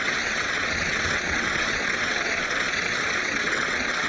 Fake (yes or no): yes